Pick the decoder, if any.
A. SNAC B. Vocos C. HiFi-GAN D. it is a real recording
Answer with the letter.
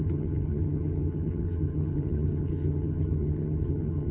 C